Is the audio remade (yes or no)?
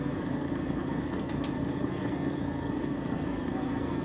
yes